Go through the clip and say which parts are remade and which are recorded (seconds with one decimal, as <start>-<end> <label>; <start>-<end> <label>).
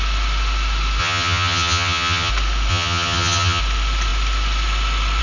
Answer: 0.0-1.0 recorded; 1.0-2.3 remade; 2.3-2.7 recorded; 2.7-3.6 remade; 3.6-5.2 recorded